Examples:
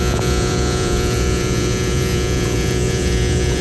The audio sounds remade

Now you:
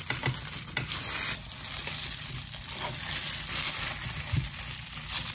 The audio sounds recorded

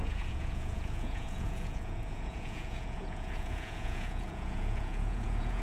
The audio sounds remade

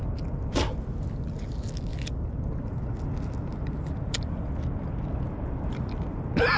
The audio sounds recorded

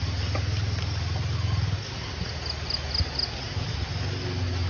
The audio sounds recorded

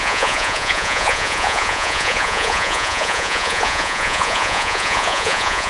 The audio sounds remade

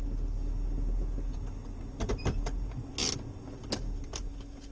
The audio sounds recorded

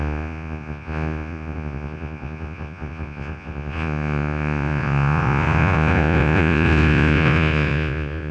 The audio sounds remade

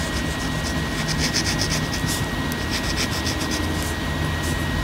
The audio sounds recorded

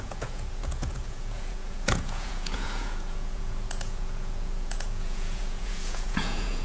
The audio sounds remade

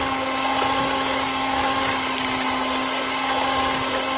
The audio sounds recorded